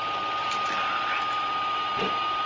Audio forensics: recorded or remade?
remade